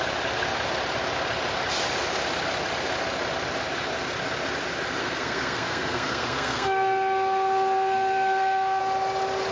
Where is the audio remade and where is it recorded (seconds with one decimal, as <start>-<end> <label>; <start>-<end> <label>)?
0.0-5.0 recorded; 5.0-8.8 remade; 8.8-9.5 recorded

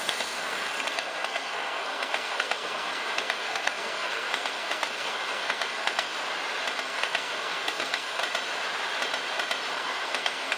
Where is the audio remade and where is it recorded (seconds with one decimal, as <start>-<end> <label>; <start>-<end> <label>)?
0.0-6.1 remade; 6.1-6.8 recorded; 6.8-8.2 remade; 8.2-9.7 recorded; 9.7-10.6 remade

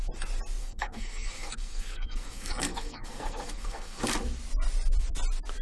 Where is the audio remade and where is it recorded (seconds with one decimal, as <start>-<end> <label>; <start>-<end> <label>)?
0.0-0.6 recorded; 0.6-4.0 remade; 4.0-5.6 recorded

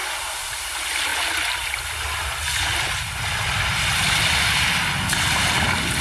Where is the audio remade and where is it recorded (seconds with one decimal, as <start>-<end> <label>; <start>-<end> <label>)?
0.0-6.0 recorded

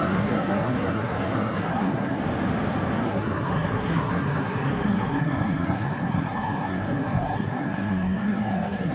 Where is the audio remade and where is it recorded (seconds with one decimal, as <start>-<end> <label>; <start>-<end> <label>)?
0.0-2.2 remade; 2.2-3.0 recorded; 3.0-8.9 remade

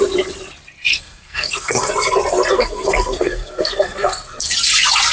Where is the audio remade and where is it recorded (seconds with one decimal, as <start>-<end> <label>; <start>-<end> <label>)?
0.0-0.9 recorded; 0.9-1.9 remade; 1.9-2.5 recorded; 2.5-4.5 remade; 4.5-5.1 recorded

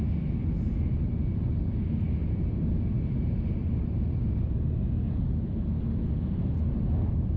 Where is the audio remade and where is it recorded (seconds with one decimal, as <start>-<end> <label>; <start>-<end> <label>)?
0.0-7.4 recorded

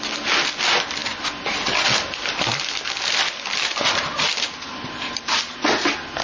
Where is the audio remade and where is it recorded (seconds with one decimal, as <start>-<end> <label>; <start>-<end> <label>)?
0.0-6.2 recorded